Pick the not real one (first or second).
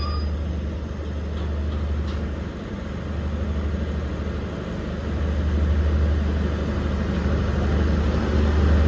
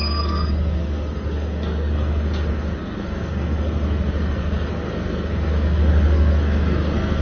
second